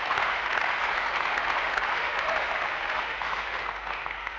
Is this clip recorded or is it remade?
remade